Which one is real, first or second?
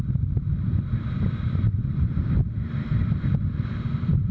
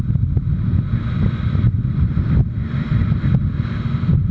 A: second